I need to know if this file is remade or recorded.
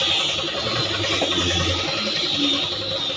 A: recorded